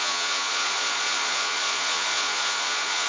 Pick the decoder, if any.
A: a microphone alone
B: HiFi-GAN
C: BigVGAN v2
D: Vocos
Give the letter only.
D